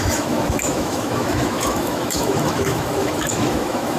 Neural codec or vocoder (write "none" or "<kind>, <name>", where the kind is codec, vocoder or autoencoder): autoencoder, DAC-VAE